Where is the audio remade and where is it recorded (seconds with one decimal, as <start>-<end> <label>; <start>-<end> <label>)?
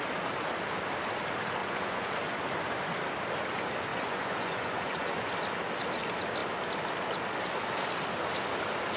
0.0-1.6 recorded; 1.6-2.4 remade; 2.4-3.9 recorded; 3.9-5.3 remade; 5.3-9.0 recorded